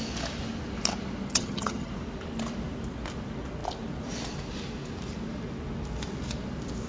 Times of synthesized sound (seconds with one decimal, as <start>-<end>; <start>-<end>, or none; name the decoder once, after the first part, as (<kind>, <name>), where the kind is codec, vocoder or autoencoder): 1.3-1.9 (vocoder, HiFi-GAN)